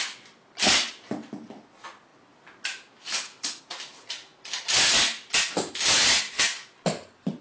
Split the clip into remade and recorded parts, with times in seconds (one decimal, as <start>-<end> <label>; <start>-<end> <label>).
0.0-7.4 recorded